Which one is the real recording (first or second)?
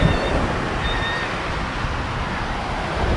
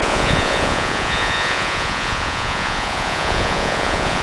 first